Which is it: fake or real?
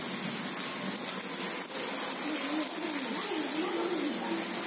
real